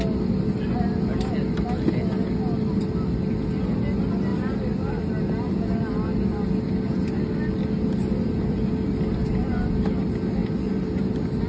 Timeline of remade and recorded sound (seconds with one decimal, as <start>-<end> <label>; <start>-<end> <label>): 0.0-11.5 recorded